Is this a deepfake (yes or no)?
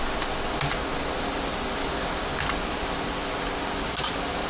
no